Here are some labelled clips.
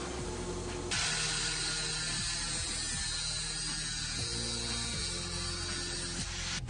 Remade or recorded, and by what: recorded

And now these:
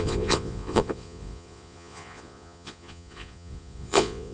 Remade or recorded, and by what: remade, vocoder, Vocos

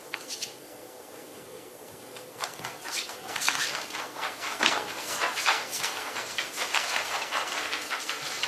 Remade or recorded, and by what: remade, codec, SNAC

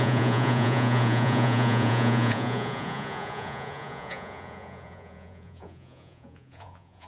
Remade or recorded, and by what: remade, vocoder, Vocos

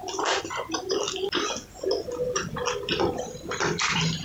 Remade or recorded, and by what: remade, vocoder, BigVGAN v2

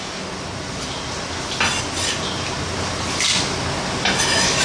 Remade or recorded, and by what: recorded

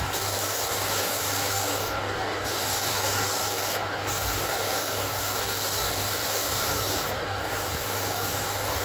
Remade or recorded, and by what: remade, codec, DAC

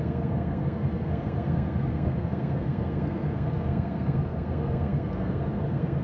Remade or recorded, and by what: remade, codec, SNAC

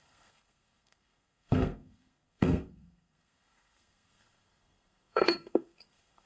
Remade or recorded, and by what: remade, codec, SNAC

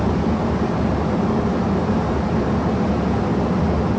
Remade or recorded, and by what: recorded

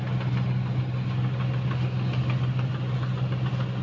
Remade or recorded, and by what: recorded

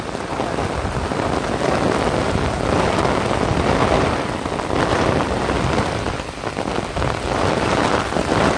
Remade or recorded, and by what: recorded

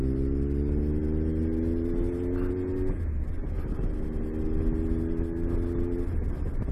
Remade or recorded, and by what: recorded